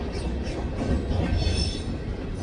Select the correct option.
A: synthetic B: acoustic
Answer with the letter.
B